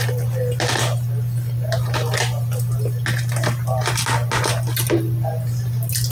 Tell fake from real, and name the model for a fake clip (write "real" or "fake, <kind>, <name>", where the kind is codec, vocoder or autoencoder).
real